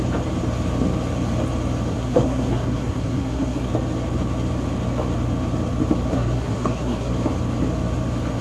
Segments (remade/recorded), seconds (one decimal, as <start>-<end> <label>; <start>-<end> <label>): 0.0-1.9 recorded; 1.9-3.7 remade; 3.7-6.1 recorded; 6.1-7.1 remade; 7.1-8.4 recorded